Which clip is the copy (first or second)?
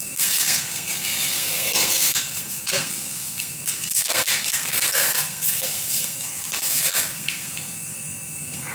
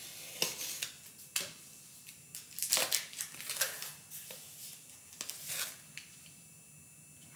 first